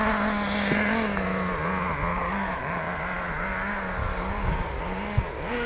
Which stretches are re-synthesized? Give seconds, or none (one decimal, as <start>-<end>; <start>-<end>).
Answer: 2.1-2.6; 4.0-4.8